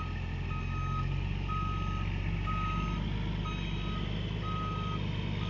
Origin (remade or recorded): recorded